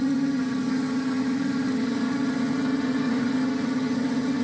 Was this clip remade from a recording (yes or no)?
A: yes